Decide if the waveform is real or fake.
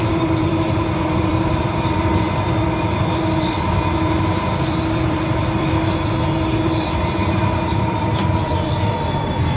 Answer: fake